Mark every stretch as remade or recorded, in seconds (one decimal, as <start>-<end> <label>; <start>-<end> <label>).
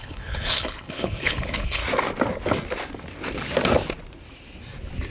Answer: 0.0-1.8 remade; 1.8-5.1 recorded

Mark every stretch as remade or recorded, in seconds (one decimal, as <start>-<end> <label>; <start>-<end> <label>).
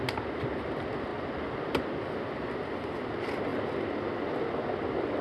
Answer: 0.0-5.2 recorded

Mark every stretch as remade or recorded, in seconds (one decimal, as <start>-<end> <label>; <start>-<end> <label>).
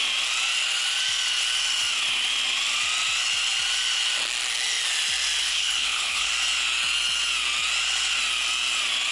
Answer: 0.0-5.4 recorded; 5.4-6.3 remade; 6.3-9.1 recorded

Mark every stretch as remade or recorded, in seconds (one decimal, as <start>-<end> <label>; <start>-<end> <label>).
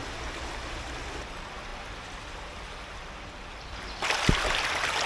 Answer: 0.0-5.1 recorded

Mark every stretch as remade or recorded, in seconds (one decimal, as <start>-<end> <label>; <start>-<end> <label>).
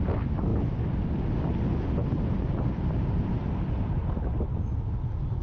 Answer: 0.0-5.4 recorded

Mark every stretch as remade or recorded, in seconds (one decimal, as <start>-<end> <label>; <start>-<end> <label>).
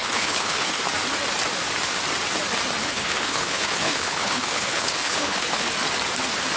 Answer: 0.0-0.8 remade; 0.8-2.8 recorded; 2.8-5.7 remade; 5.7-6.6 recorded